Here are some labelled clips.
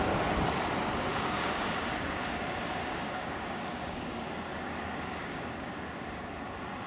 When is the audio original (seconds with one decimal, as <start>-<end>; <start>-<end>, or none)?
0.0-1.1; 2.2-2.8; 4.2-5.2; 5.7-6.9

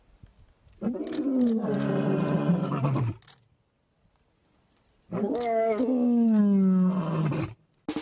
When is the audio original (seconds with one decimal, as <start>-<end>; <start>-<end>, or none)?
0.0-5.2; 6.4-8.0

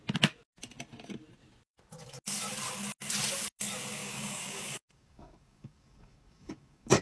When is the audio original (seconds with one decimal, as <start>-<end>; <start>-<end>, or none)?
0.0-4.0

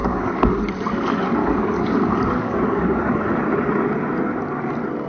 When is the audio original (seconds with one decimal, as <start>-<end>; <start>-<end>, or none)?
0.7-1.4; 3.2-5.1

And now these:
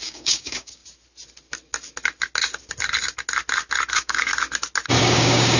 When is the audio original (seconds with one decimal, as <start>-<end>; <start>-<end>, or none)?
0.8-3.9; 4.3-5.0

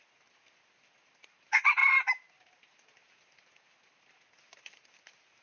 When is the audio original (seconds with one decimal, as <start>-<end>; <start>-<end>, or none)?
0.0-5.4

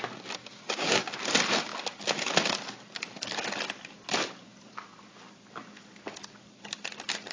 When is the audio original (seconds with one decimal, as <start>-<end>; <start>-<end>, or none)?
0.0-0.4; 1.0-7.3

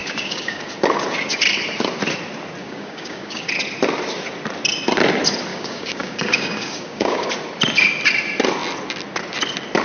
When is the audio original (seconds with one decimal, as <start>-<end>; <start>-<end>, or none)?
0.7-2.6; 3.5-5.5; 7.3-9.8